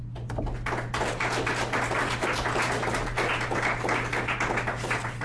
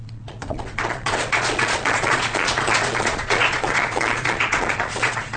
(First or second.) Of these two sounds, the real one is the first